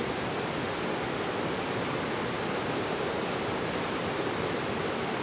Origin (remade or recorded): recorded